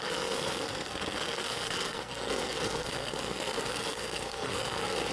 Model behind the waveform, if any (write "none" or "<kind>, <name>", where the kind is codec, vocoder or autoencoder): codec, SNAC